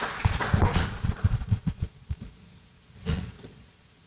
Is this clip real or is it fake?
fake